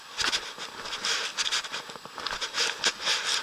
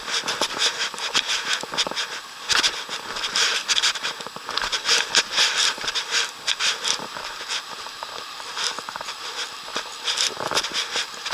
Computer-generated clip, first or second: second